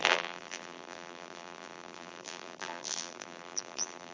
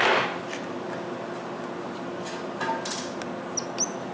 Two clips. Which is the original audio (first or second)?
second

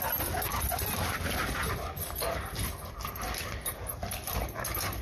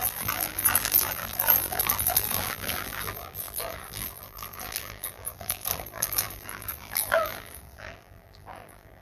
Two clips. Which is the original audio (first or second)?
first